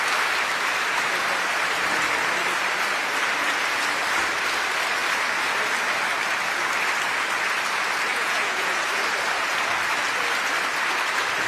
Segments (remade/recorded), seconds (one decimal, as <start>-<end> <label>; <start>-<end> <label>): 0.0-8.1 recorded; 8.1-8.8 remade; 8.8-11.5 recorded